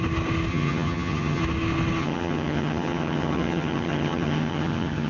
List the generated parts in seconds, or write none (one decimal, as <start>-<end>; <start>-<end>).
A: 0.5-1.4; 2.0-5.1